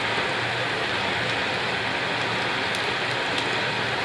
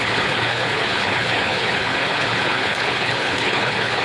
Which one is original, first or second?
first